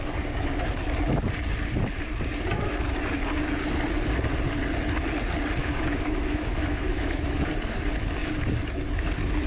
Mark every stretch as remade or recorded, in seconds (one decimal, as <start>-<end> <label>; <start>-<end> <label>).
0.0-5.6 recorded; 5.6-7.5 remade; 7.5-9.5 recorded